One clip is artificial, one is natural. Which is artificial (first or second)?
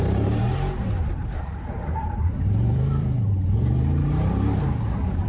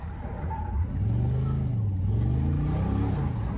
first